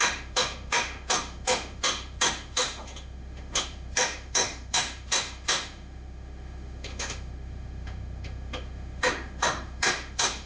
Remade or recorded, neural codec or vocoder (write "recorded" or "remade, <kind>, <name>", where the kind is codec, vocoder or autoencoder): remade, autoencoder, DAC-VAE